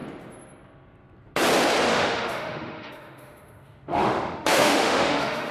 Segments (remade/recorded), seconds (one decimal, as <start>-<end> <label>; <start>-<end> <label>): 0.0-1.9 recorded; 1.9-5.5 remade